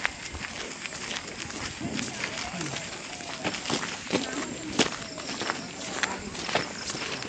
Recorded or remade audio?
recorded